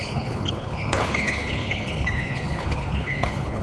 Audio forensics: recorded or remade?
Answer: remade